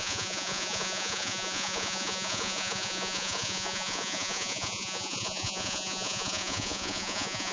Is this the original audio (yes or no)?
no